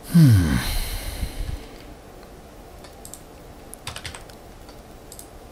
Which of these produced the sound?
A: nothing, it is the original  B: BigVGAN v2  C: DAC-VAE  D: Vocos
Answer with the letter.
A